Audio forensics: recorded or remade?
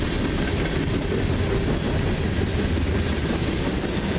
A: recorded